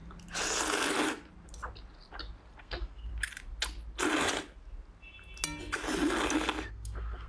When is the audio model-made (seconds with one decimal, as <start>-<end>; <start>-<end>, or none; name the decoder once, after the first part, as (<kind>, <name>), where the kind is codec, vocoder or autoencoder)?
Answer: 2.6-3.1 (codec, SNAC); 6.7-7.3